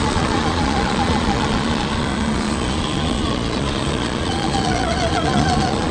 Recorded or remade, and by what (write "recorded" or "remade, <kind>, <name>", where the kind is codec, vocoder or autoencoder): remade, vocoder, Vocos